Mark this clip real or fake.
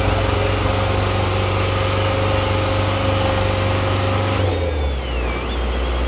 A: real